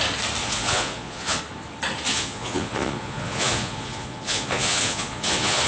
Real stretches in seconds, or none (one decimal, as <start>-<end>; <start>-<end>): 0.0-0.4; 1.4-2.1